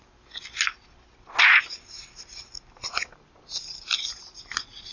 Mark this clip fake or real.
real